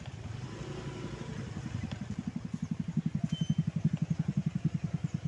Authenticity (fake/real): real